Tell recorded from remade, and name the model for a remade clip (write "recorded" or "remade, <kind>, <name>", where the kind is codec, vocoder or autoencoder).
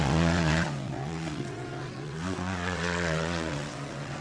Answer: remade, vocoder, WaveNeXt